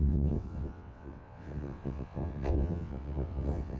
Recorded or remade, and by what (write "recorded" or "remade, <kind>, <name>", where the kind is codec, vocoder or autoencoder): remade, vocoder, WaveNeXt